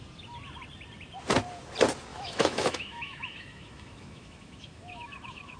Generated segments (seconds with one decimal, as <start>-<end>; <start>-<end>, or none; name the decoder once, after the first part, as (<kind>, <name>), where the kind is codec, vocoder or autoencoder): 2.1-5.6 (autoencoder, DAC-VAE)